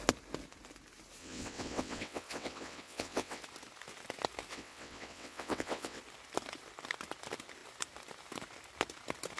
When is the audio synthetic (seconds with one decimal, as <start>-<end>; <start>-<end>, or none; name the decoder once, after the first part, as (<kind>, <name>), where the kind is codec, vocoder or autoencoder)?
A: 1.2-3.4 (vocoder, WaveNeXt); 4.5-6.0